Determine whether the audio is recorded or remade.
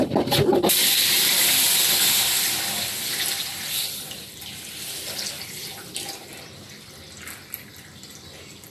recorded